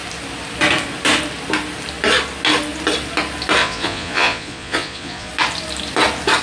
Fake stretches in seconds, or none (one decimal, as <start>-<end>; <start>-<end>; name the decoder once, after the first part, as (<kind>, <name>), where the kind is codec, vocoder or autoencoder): 3.6-5.3 (vocoder, Vocos)